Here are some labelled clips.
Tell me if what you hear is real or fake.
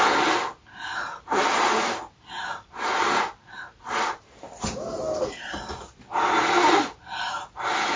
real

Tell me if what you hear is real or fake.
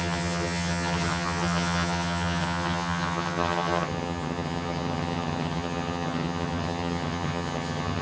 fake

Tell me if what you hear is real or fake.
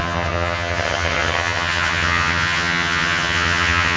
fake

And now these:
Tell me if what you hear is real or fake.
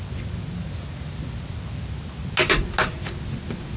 real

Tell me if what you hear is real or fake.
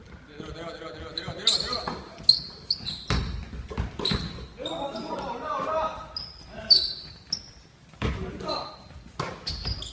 real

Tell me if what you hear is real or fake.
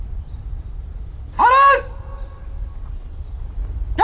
real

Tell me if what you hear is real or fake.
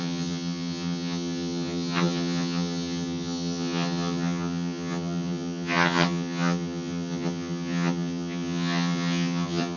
fake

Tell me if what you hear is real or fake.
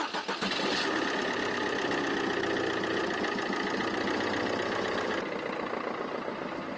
real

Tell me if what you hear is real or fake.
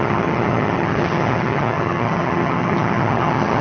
fake